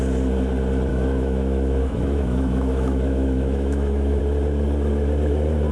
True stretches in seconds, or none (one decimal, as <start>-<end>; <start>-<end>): 0.0-0.9; 4.2-5.7